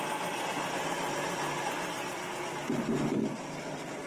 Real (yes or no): yes